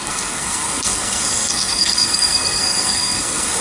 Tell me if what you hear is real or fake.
fake